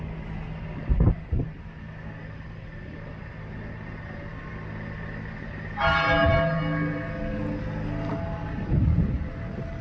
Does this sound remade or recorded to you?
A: recorded